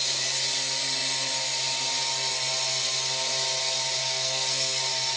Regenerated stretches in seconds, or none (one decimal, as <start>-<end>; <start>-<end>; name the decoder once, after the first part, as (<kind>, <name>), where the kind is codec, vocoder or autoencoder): 4.0-4.8 (codec, SNAC)